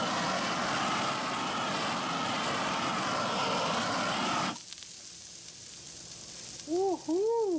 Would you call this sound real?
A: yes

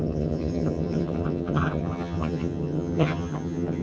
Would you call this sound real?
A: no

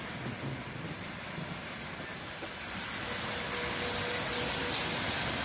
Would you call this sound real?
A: yes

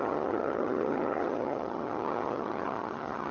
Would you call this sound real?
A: no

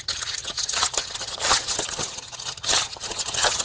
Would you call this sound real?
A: no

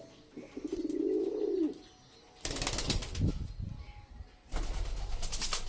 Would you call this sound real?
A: yes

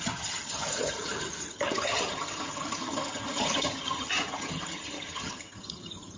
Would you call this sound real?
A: no